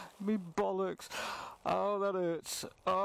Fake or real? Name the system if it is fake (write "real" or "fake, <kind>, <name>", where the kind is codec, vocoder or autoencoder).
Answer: real